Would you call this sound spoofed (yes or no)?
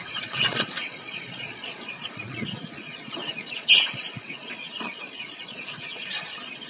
yes